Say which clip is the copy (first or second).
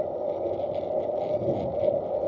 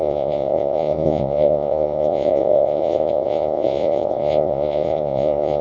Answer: second